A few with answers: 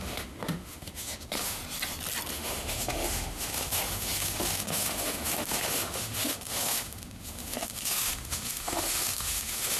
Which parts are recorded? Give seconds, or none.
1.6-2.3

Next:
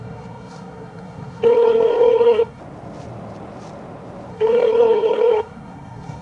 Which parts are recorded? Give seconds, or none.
2.6-4.3

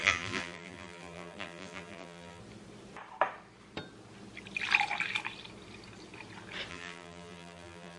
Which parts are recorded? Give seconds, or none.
2.4-6.7

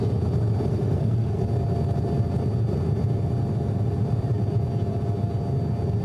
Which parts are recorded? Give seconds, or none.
0.0-0.7; 1.4-6.0